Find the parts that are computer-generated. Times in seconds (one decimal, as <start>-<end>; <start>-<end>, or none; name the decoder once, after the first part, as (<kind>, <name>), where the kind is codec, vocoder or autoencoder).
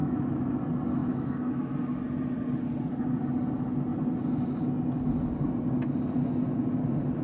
0.0-0.6 (autoencoder, DAC-VAE); 1.0-1.7